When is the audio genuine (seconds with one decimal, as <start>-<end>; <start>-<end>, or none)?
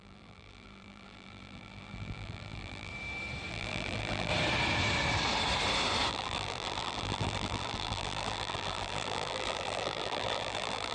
2.9-3.5; 4.3-6.1